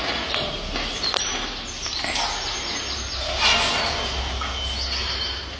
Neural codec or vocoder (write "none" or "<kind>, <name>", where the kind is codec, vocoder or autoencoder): none